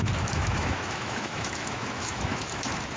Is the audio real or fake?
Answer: fake